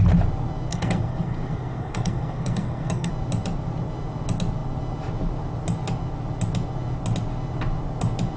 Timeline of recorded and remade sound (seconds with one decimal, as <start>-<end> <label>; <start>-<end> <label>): 0.0-0.7 recorded; 0.7-3.1 remade; 3.1-8.4 recorded